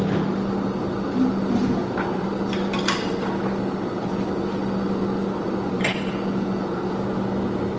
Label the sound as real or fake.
real